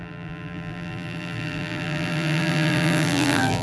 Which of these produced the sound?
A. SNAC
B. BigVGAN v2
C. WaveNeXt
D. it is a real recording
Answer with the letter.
B